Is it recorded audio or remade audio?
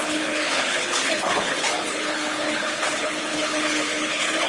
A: remade